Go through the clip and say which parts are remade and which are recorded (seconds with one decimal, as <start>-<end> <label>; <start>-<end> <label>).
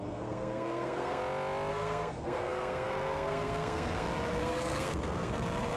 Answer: 0.0-1.2 remade; 1.2-1.7 recorded; 1.7-5.8 remade